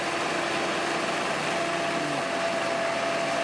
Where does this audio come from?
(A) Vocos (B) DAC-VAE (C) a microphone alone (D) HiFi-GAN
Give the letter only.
C